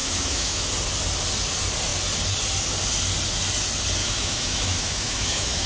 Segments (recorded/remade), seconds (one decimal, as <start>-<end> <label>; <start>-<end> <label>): 0.0-0.7 remade; 0.7-4.0 recorded; 4.0-5.7 remade